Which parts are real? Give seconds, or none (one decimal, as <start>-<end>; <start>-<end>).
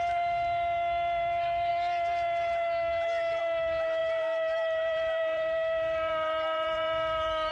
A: 0.0-4.0